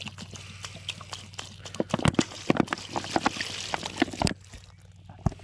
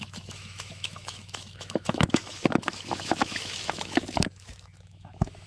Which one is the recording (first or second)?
first